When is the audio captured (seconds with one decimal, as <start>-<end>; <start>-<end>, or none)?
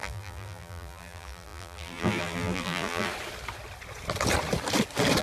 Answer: 3.1-5.2